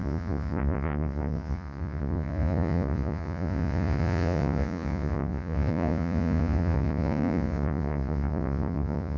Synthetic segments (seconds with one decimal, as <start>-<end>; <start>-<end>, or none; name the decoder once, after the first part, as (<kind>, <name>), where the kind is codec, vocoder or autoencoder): 0.0-9.2 (vocoder, Vocos)